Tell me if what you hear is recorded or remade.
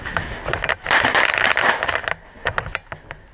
recorded